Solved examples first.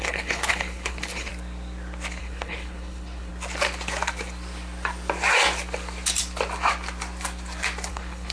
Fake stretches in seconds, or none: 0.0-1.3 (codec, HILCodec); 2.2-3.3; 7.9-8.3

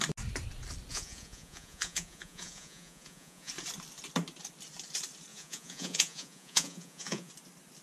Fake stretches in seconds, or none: 0.9-3.5 (vocoder, Vocos); 5.3-7.3

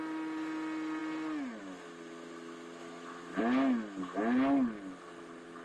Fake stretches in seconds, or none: 2.8-3.4 (autoencoder, DAC-VAE)

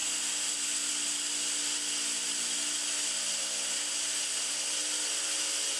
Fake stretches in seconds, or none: none

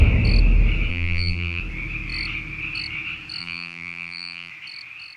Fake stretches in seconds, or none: 0.9-1.6 (vocoder, BigVGAN v2); 3.4-4.5

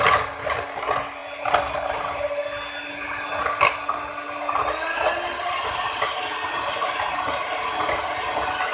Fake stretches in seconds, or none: none